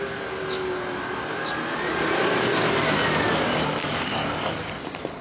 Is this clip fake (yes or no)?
no